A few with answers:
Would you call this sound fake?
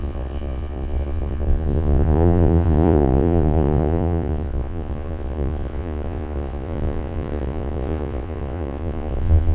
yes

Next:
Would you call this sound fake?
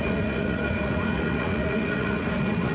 yes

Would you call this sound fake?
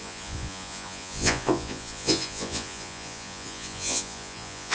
yes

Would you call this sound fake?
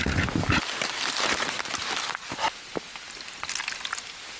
no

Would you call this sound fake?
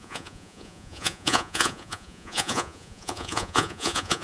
yes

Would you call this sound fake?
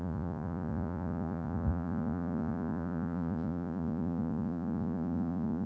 yes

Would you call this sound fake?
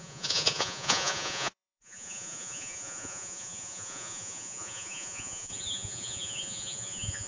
yes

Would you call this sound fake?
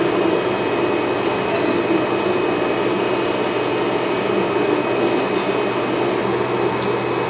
no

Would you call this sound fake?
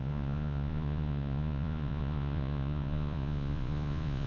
yes